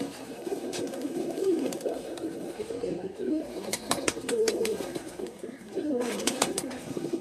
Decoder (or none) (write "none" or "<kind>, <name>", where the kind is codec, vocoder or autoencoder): codec, SNAC